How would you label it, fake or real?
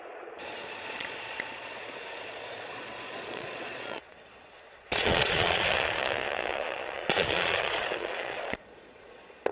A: fake